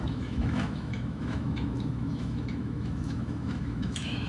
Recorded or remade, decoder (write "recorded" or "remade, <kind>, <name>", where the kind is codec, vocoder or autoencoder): remade, autoencoder, DAC-VAE